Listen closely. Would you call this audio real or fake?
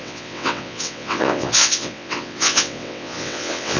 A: fake